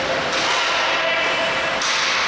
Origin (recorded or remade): recorded